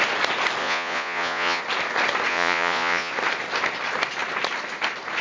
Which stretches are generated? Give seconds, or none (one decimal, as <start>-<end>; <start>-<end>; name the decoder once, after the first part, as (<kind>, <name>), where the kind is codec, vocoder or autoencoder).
0.6-1.6 (vocoder, Vocos); 2.3-3.1